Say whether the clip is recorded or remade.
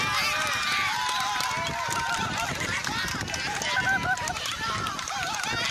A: recorded